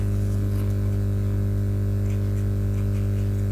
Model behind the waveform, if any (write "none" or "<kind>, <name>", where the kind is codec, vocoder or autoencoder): none